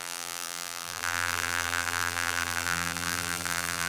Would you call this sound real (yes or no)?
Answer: no